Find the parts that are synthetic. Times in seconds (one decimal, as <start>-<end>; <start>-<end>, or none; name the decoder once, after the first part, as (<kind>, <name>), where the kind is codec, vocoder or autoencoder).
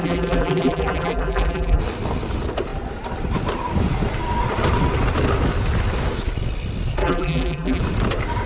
0.0-1.8 (vocoder, BigVGAN v2); 7.0-7.8